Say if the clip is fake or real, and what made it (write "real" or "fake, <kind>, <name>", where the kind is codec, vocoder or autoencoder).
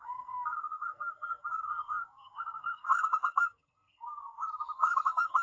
fake, codec, SNAC